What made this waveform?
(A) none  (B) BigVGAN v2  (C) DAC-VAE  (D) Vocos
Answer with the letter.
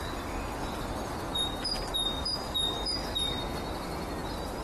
A